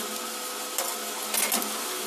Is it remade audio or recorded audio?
recorded